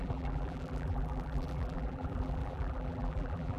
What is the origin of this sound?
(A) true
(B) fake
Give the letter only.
B